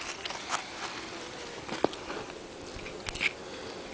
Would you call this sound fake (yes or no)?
no